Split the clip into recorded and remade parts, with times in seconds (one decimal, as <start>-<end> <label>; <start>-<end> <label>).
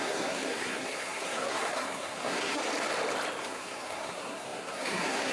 0.0-2.6 remade; 2.6-3.4 recorded; 3.4-5.3 remade